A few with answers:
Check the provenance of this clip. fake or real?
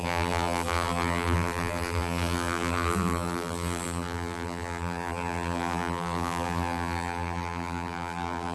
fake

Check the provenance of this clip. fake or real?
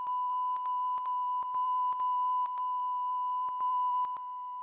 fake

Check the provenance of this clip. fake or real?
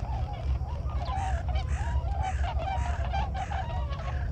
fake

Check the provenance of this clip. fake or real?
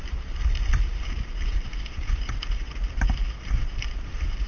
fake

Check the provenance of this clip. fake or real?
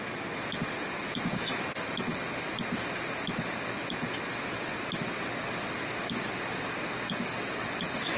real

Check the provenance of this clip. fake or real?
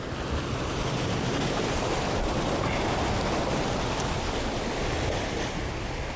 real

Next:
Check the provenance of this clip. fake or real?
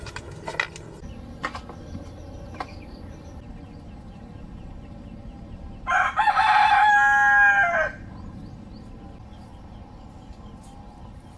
real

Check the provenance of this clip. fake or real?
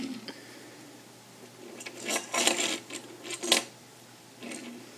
real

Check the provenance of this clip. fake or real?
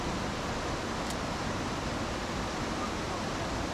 real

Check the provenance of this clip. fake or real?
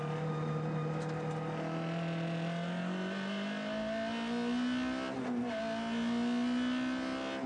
real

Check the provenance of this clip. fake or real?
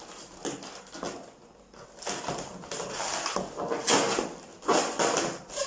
real